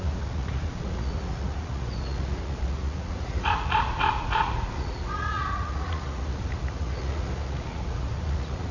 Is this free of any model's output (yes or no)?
no